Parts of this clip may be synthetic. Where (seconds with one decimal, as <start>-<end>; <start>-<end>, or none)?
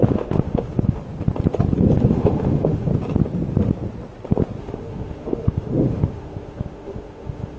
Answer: 0.0-1.0; 2.1-2.9; 4.6-7.6